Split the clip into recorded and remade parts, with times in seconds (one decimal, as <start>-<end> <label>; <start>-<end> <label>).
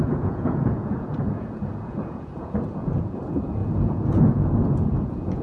0.0-5.4 remade